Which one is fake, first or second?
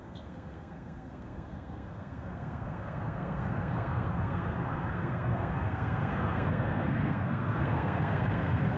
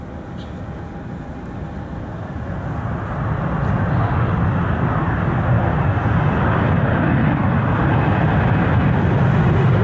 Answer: first